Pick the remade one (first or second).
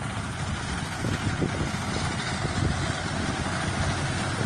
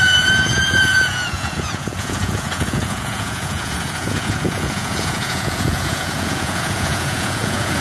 second